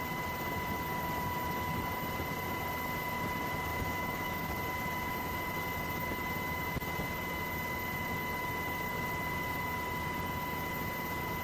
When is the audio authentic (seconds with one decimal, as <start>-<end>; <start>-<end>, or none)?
0.0-3.7; 4.5-11.4